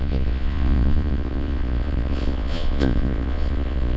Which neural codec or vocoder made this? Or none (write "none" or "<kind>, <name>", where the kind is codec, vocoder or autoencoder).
vocoder, Vocos